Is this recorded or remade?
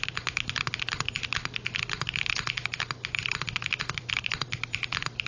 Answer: recorded